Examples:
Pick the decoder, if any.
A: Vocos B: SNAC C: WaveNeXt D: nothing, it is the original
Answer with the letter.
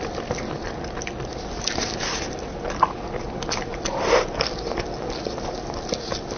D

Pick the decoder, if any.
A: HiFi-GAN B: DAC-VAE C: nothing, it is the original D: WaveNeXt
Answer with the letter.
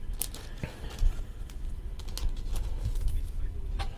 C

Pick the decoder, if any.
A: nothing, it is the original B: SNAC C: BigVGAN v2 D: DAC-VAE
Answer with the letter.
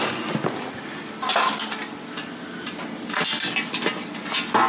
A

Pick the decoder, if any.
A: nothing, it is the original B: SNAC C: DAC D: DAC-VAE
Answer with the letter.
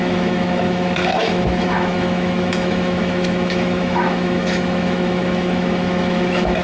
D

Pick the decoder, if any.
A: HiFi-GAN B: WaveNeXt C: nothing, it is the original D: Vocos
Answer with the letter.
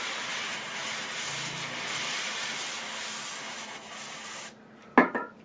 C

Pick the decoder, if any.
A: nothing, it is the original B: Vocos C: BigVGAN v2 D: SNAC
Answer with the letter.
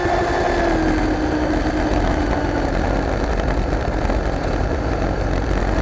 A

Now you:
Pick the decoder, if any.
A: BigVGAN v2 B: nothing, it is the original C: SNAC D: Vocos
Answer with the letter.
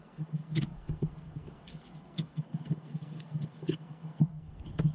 C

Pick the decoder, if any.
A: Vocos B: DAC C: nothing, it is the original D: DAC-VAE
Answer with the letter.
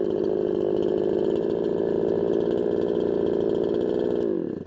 C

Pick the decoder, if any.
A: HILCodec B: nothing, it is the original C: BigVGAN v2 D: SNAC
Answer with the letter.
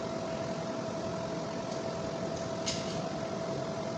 B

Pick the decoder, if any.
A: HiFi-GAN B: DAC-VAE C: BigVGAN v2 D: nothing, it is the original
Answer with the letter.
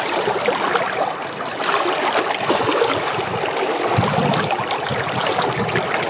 D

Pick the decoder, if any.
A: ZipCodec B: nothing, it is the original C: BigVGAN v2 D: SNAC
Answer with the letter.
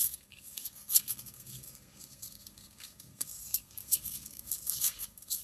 D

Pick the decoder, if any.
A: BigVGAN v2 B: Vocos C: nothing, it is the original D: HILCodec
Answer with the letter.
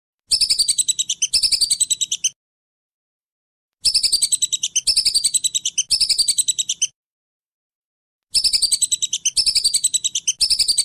C